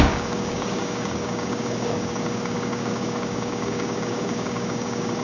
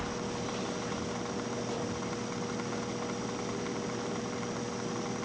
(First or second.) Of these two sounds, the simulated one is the first